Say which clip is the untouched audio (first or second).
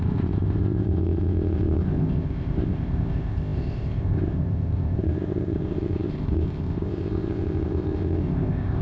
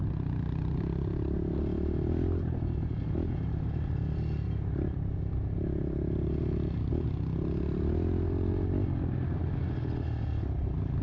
second